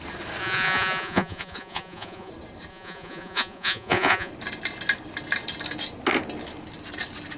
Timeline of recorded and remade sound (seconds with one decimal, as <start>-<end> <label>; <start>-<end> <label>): 0.0-0.4 recorded; 0.4-2.3 remade; 2.3-2.7 recorded; 2.7-4.3 remade; 4.3-7.4 recorded